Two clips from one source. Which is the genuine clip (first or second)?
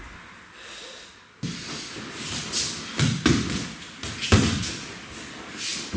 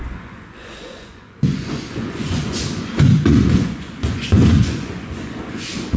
first